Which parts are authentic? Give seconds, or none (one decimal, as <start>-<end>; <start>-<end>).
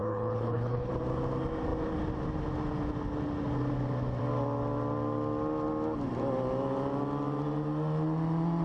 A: 0.9-8.6